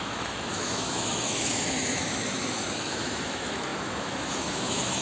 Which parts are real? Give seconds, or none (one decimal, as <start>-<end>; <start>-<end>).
none